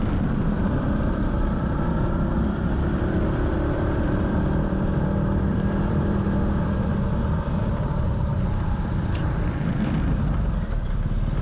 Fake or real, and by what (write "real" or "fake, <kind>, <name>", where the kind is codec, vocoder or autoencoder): fake, vocoder, BigVGAN v2